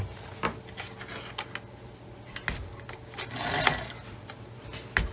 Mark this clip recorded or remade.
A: recorded